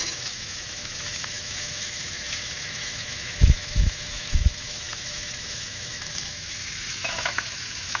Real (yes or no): no